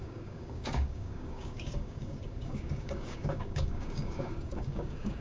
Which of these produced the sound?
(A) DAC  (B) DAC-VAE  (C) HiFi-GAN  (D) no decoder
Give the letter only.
A